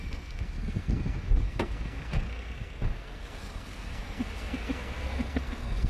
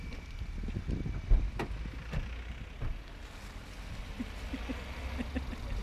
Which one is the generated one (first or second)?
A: first